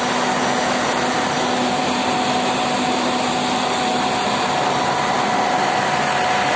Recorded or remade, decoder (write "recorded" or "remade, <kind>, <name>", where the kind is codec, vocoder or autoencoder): recorded